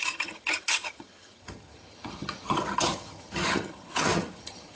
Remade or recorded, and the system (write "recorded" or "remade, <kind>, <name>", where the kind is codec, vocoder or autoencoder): remade, vocoder, HiFi-GAN